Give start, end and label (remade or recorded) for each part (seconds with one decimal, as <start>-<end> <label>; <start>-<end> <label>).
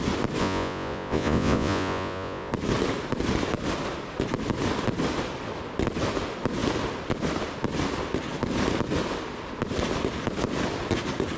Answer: 0.0-0.4 recorded; 0.4-2.5 remade; 2.5-11.4 recorded